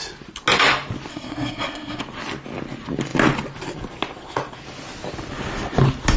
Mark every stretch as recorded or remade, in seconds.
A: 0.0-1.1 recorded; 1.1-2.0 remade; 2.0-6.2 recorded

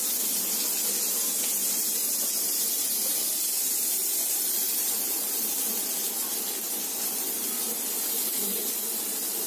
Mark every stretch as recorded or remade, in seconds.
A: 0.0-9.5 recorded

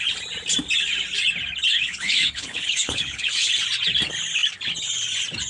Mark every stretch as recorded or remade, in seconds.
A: 0.0-1.7 recorded; 1.7-3.5 remade; 3.5-5.5 recorded

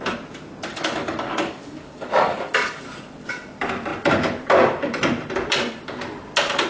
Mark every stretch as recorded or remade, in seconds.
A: 0.0-0.7 recorded; 0.7-2.8 remade; 2.8-6.7 recorded

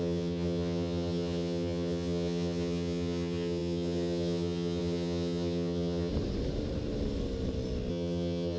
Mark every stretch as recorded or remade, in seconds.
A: 0.0-6.1 remade; 6.1-7.9 recorded; 7.9-8.6 remade